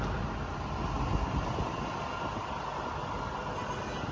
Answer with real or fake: real